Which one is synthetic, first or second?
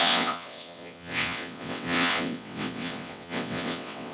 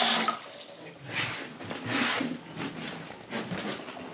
first